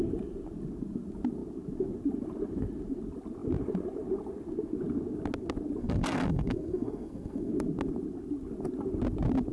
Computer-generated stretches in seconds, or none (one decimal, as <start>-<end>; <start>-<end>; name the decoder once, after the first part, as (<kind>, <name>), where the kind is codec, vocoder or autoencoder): 5.8-7.5 (codec, SNAC)